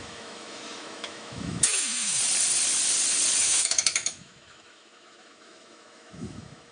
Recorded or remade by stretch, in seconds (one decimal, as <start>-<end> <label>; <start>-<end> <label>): 0.0-2.2 remade; 2.2-3.4 recorded; 3.4-6.7 remade